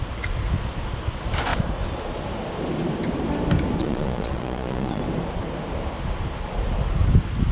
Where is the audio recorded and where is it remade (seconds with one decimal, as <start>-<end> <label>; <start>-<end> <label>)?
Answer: 0.0-3.8 recorded; 3.8-5.0 remade; 5.0-7.5 recorded